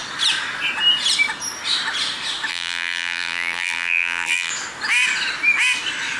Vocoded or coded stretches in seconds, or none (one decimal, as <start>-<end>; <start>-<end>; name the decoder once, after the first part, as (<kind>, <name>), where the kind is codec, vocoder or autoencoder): 2.5-4.5 (vocoder, BigVGAN v2)